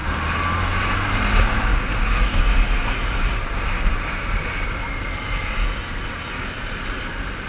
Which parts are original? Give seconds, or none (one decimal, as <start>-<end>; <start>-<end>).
0.0-1.7; 2.4-7.5

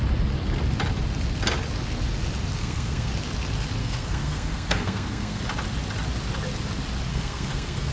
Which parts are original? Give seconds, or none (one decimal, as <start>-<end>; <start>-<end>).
0.0-2.6; 3.1-3.8; 5.4-7.1